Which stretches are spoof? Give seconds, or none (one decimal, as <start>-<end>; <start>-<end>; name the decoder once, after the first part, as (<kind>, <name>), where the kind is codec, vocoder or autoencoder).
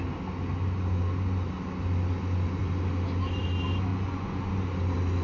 3.9-4.5 (vocoder, Vocos)